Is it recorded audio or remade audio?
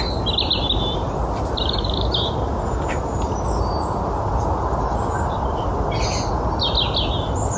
recorded